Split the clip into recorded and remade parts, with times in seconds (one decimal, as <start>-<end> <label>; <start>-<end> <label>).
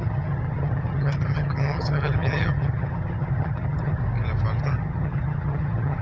0.0-4.0 remade; 4.0-4.6 recorded; 4.6-6.0 remade